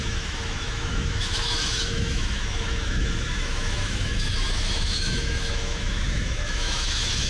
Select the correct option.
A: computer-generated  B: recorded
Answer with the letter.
A